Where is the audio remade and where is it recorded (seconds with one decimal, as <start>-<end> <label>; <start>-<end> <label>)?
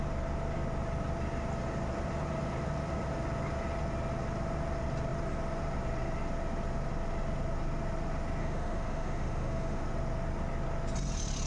0.0-8.4 recorded; 8.4-9.8 remade; 9.8-11.5 recorded